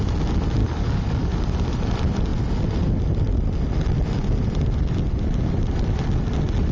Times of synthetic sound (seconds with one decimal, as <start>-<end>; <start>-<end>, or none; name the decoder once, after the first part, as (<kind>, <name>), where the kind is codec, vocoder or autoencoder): 0.6-1.3 (codec, DAC)